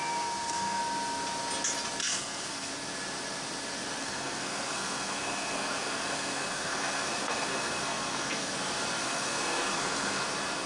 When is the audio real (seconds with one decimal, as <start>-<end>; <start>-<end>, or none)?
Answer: 0.8-2.0; 2.7-4.0; 8.5-9.0; 10.2-10.7

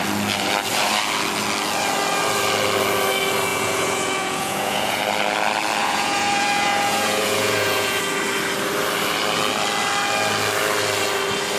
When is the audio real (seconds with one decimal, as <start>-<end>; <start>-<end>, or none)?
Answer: 0.0-3.5; 5.0-5.8; 8.0-11.6

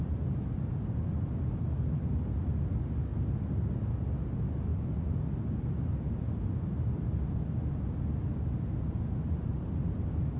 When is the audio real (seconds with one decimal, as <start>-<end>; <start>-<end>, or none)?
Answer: 0.0-10.4

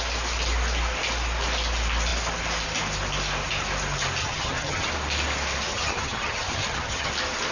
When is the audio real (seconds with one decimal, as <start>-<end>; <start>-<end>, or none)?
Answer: 0.0-4.2; 4.9-5.7; 7.1-7.5

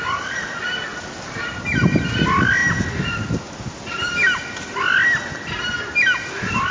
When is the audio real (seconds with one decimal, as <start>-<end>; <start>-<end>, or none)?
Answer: 0.0-6.7